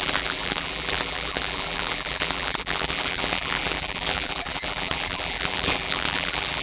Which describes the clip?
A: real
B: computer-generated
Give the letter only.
B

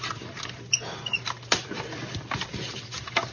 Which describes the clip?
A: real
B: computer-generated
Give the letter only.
B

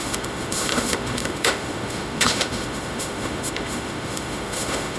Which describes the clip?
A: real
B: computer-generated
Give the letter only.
B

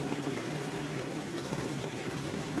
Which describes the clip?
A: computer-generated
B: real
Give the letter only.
A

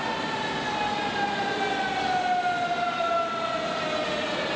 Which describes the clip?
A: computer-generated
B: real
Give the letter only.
B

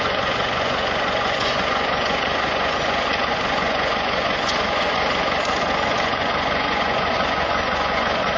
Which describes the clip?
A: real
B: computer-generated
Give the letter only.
B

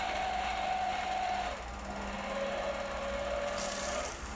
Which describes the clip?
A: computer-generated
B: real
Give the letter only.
B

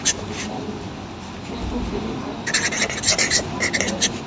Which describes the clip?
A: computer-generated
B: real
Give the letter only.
B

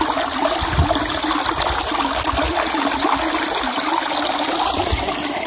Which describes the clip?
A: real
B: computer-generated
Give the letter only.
A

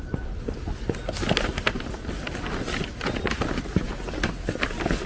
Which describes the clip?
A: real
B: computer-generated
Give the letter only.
A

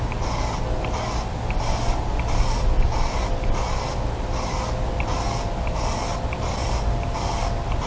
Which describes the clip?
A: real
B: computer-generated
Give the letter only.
A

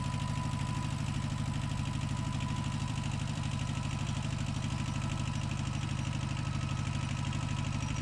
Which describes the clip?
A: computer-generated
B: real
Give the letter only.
A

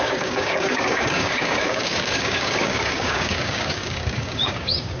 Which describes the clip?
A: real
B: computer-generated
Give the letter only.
B